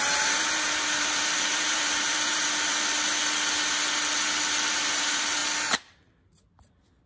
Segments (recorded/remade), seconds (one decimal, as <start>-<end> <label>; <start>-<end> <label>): 0.0-2.7 remade; 2.7-4.7 recorded; 4.7-5.4 remade; 5.4-7.1 recorded